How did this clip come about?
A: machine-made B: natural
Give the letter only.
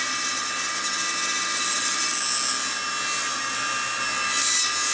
B